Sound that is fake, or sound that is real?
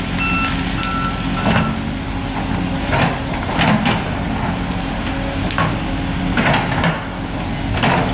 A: real